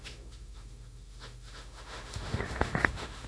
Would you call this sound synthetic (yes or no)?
yes